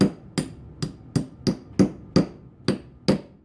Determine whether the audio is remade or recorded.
recorded